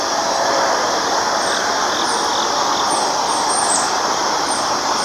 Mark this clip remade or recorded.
recorded